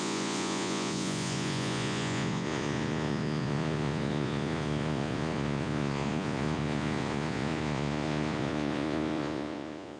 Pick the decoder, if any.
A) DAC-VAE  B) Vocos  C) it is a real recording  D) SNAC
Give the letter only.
B